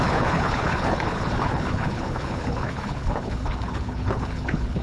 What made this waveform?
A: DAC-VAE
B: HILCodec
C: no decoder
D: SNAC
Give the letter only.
B